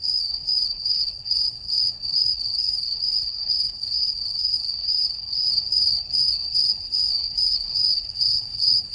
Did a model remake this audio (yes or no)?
yes